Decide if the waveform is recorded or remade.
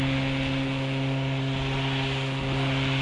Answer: recorded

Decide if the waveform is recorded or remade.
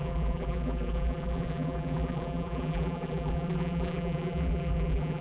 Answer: remade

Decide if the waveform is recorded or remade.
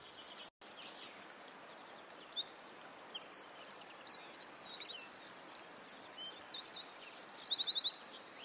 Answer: recorded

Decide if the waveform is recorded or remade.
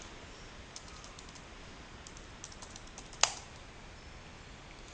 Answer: recorded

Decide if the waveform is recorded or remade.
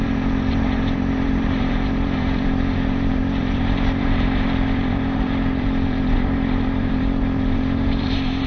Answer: remade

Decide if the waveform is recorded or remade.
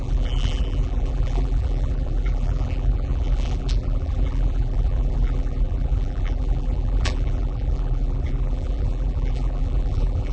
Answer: remade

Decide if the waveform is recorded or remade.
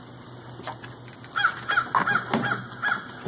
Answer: recorded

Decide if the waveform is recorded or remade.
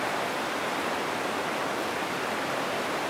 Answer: recorded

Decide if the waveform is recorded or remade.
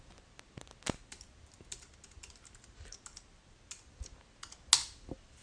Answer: recorded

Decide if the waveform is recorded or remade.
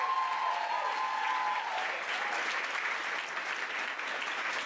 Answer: recorded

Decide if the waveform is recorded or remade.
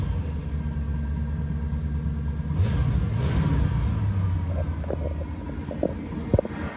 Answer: recorded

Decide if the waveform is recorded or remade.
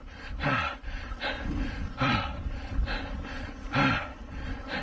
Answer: remade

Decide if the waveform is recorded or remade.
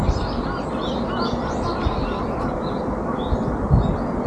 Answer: recorded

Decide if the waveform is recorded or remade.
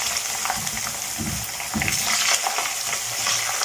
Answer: recorded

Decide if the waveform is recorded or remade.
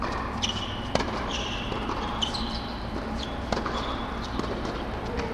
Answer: remade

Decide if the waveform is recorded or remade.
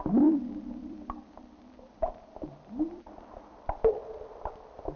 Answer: remade